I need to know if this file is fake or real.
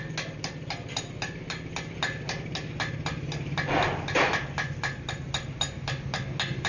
real